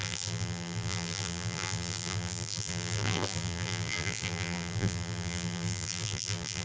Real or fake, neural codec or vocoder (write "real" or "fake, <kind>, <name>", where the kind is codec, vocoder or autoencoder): fake, vocoder, BigVGAN v2